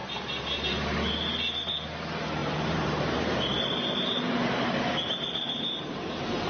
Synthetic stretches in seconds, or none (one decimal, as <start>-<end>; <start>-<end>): 2.4-6.5